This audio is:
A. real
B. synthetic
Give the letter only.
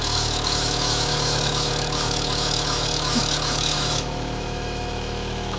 B